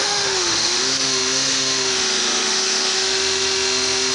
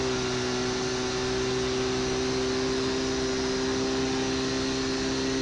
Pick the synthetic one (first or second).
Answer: first